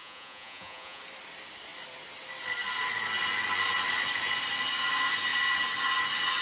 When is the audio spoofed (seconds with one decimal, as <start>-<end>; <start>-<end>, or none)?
0.0-1.0